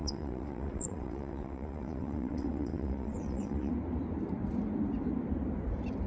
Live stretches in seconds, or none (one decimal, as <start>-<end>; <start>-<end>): 3.7-6.1